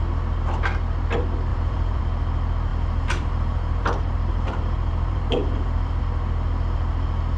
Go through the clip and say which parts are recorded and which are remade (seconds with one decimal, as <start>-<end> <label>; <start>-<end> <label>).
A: 0.0-1.5 recorded; 1.5-2.0 remade; 2.0-2.7 recorded; 2.7-6.0 remade; 6.0-7.4 recorded